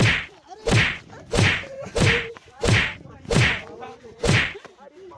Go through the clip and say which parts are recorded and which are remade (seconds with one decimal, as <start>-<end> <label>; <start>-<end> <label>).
0.0-1.3 recorded; 1.3-4.4 remade; 4.4-5.2 recorded